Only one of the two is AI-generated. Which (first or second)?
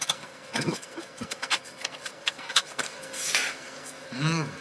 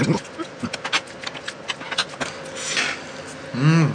first